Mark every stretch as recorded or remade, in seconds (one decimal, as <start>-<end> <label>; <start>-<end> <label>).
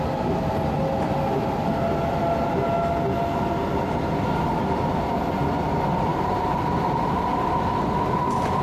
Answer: 0.0-6.1 recorded; 6.1-7.7 remade; 7.7-8.6 recorded